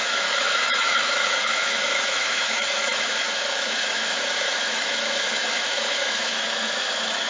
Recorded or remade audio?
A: remade